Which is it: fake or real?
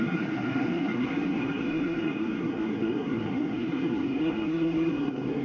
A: fake